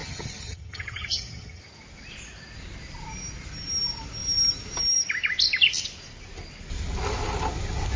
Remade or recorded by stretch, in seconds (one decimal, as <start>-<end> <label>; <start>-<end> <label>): 0.0-1.6 remade; 1.6-8.0 recorded